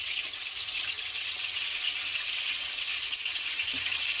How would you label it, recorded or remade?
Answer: remade